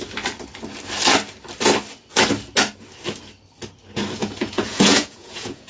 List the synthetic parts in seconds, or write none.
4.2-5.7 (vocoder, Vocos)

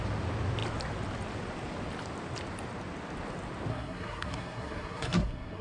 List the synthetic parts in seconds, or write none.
3.7-5.6 (codec, SNAC)

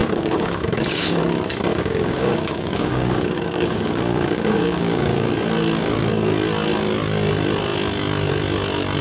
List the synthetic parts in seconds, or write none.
0.0-1.2 (codec, DAC); 1.7-5.3

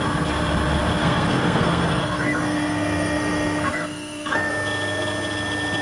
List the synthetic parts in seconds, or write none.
1.0-4.5 (codec, SNAC)